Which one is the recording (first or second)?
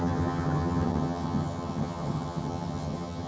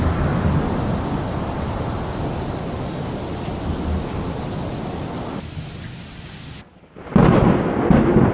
second